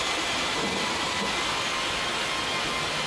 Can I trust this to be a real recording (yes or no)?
yes